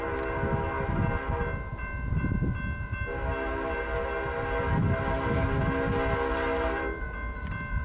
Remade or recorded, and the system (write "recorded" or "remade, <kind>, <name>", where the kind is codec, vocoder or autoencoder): recorded